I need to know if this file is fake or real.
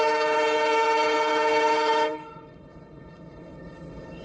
fake